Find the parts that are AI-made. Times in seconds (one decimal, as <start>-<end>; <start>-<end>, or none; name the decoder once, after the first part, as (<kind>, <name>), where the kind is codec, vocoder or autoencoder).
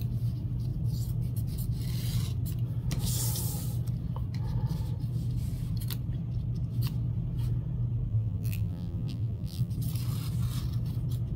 8.1-9.7 (vocoder, BigVGAN v2)